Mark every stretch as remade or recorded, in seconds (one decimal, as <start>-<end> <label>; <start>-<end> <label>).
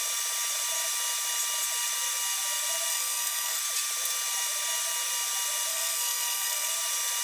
0.0-2.9 recorded; 2.9-3.6 remade; 3.6-5.7 recorded; 5.7-6.7 remade; 6.7-7.2 recorded